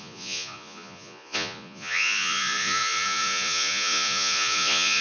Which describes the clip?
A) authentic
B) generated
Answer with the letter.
B